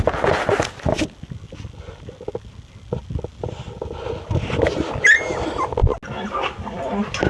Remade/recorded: recorded